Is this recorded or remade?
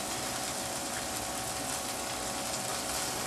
recorded